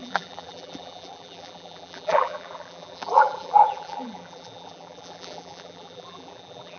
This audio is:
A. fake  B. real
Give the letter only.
A